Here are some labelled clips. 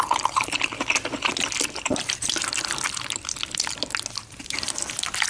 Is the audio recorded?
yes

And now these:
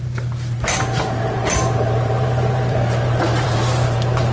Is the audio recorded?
no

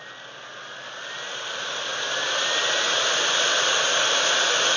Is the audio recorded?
yes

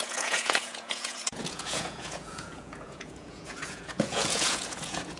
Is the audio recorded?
no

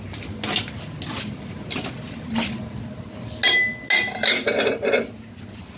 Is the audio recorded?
yes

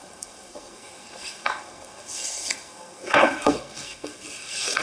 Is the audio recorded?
no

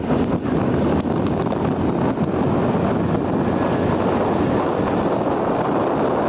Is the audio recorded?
yes